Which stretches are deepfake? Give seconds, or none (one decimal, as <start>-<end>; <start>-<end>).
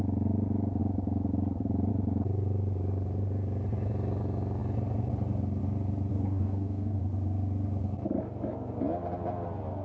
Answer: 6.1-7.0